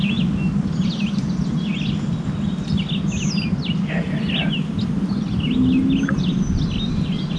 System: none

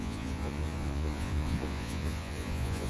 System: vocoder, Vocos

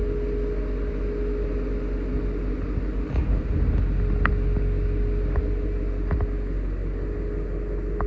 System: none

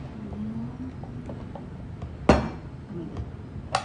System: none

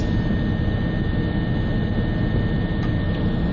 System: none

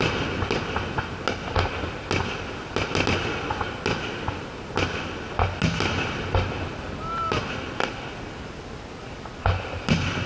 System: none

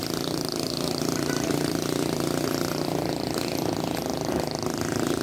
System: none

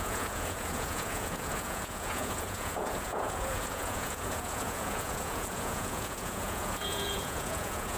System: vocoder, Vocos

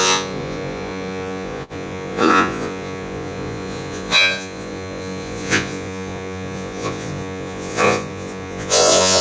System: vocoder, Vocos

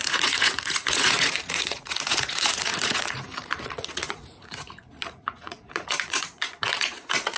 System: vocoder, Vocos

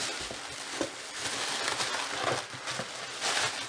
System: none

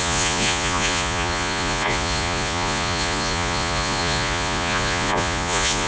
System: vocoder, Vocos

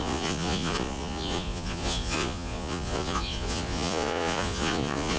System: vocoder, Vocos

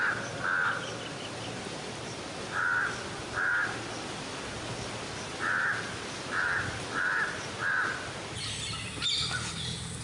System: none